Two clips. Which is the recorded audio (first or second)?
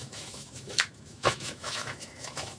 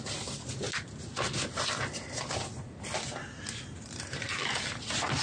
second